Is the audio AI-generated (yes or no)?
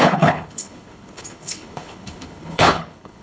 yes